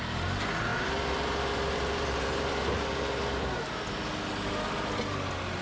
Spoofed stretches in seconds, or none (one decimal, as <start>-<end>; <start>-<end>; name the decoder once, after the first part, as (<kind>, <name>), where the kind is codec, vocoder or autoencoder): 0.7-3.6 (vocoder, BigVGAN v2)

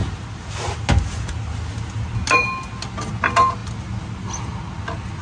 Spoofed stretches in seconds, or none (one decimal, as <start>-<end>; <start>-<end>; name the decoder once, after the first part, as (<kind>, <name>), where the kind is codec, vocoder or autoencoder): none

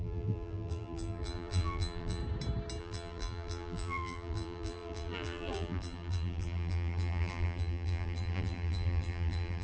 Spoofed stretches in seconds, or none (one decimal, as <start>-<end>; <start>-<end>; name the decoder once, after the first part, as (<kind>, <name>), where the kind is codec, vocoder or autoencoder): 0.0-2.2 (vocoder, BigVGAN v2); 2.8-9.6

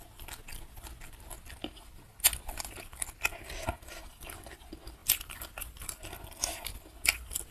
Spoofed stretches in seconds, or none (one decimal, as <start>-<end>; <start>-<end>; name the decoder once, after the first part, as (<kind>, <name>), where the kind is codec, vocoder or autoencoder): 5.0-7.5 (vocoder, BigVGAN v2)

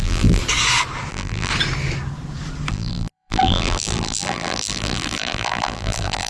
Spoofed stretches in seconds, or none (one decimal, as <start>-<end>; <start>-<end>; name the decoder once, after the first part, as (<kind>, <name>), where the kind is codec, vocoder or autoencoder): 0.0-0.4 (vocoder, BigVGAN v2); 1.1-1.5; 2.7-6.3

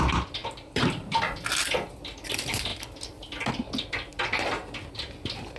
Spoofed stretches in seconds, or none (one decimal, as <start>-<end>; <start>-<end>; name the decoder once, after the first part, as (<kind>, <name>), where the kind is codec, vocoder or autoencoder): 0.4-1.2 (vocoder, BigVGAN v2)

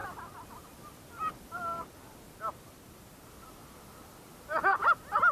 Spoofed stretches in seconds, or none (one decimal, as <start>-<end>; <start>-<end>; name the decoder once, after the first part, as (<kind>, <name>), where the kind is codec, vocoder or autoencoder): none